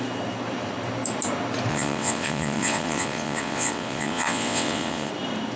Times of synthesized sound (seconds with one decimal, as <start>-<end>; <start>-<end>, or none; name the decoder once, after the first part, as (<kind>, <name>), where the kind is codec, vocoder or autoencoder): 1.7-5.1 (vocoder, WaveNeXt)